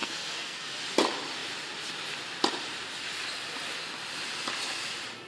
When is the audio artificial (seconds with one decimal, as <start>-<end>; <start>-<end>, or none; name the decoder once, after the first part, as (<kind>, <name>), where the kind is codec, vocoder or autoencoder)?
0.0-0.8 (codec, SNAC)